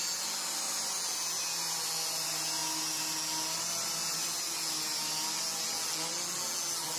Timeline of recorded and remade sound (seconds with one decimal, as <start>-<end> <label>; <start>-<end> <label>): 0.0-7.0 recorded